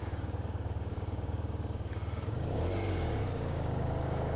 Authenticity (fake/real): fake